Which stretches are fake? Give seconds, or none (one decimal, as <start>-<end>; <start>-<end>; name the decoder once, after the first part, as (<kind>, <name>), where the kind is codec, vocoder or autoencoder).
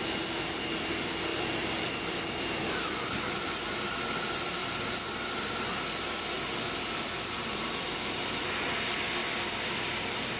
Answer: none